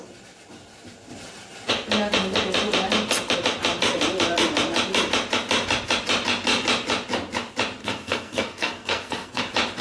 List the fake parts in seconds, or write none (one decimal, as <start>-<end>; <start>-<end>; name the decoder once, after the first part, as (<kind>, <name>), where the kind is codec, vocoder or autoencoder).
7.8-9.4 (codec, SNAC)